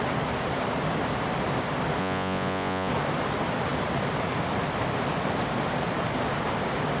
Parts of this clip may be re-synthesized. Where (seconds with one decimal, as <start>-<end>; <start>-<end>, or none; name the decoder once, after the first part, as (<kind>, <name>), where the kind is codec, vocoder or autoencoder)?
2.0-2.9 (vocoder, Vocos)